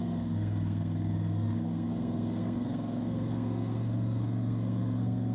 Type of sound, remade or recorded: remade